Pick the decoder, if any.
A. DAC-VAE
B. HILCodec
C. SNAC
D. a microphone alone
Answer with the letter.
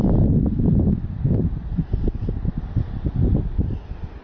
D